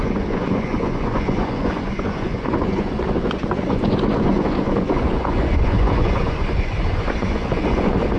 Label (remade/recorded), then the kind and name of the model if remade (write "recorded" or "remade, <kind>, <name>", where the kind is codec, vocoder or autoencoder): remade, vocoder, Vocos